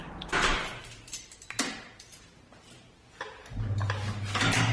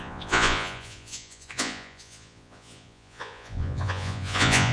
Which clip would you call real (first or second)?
first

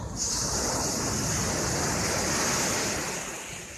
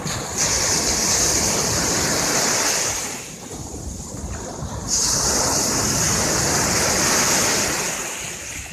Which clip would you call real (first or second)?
first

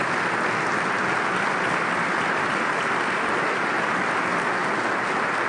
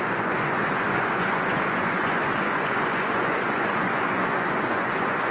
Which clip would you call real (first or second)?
first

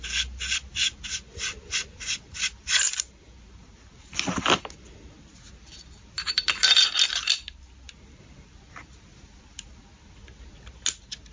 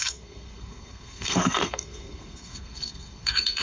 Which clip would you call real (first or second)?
first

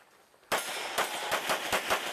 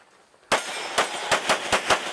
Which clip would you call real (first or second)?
second